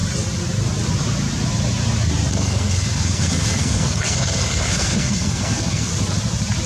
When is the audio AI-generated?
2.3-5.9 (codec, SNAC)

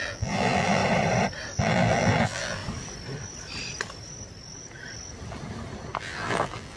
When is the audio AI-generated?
0.0-0.8 (vocoder, BigVGAN v2); 1.6-2.6; 6.0-6.8

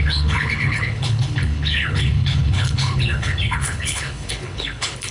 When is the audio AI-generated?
0.0-5.1 (codec, HILCodec)

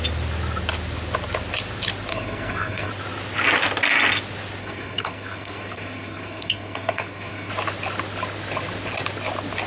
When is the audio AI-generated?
2.1-2.9 (codec, SNAC); 4.6-7.5